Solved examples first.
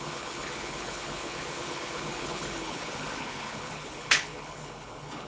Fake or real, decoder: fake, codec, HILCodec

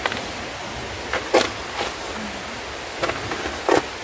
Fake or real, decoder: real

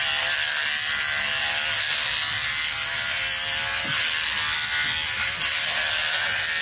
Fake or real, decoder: real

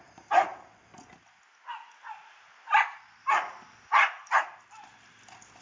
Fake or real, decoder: real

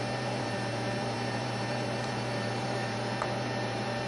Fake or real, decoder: fake, vocoder, BigVGAN v2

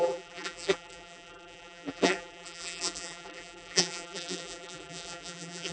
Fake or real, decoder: fake, vocoder, BigVGAN v2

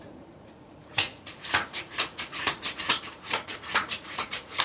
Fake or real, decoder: fake, vocoder, Vocos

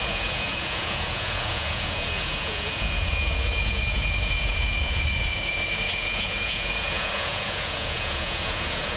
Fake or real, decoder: fake, vocoder, Vocos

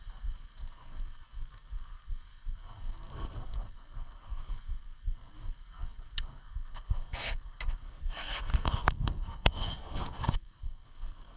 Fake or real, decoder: fake, codec, SNAC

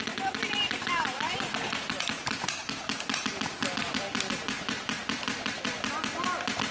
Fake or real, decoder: real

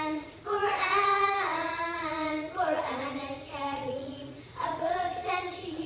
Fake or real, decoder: fake, vocoder, Vocos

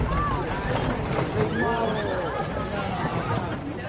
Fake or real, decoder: real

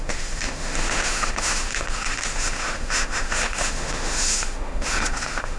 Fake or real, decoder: fake, autoencoder, DAC-VAE